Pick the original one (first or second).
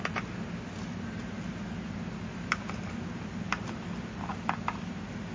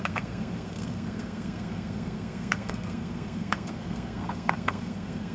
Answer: first